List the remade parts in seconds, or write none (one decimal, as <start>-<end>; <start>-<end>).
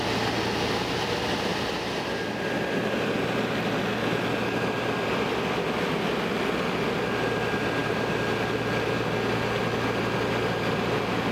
none